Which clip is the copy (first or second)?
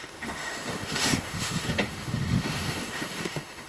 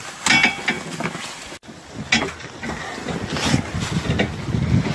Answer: first